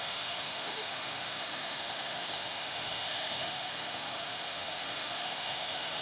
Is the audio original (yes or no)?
no